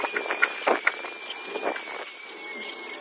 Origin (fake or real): real